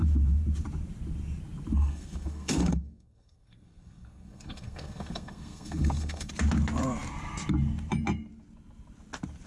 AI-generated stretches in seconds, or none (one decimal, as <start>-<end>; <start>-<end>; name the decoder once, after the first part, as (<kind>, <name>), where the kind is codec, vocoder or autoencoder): 1.8-6.3 (codec, SNAC)